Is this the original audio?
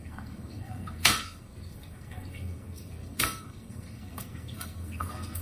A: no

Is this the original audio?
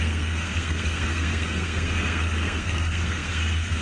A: no